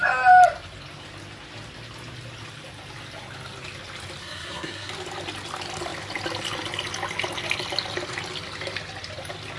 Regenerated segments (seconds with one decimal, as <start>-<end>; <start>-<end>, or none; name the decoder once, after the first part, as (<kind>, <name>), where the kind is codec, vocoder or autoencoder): 4.2-4.9 (codec, SNAC)